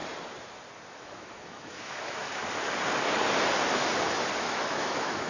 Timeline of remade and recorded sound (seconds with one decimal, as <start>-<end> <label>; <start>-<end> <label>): 0.0-0.9 recorded; 0.9-2.4 remade; 2.4-4.4 recorded; 4.4-5.3 remade